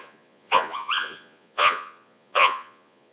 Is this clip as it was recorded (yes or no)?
no